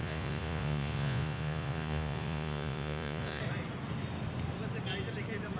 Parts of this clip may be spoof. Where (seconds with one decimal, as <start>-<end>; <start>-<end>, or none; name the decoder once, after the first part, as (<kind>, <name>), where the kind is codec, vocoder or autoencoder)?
0.0-3.4 (vocoder, Vocos)